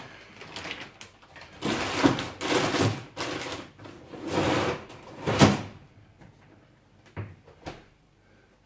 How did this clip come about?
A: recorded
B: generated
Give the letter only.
A